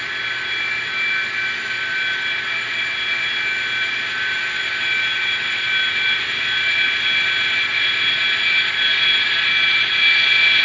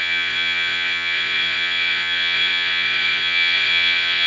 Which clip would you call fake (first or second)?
second